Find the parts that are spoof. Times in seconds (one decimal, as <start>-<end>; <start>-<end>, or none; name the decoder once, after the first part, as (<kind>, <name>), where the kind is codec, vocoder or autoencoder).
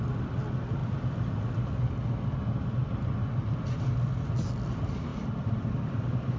5.1-6.4 (vocoder, BigVGAN v2)